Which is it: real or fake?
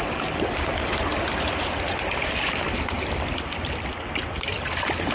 real